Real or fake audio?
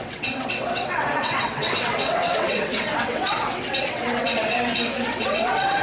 fake